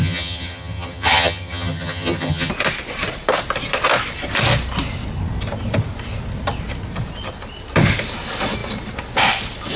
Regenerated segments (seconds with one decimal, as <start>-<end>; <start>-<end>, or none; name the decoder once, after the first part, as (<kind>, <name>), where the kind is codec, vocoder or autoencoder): 0.0-2.5 (vocoder, HiFi-GAN)